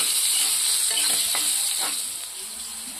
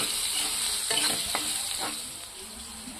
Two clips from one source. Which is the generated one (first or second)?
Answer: second